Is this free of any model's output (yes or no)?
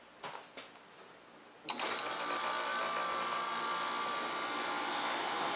yes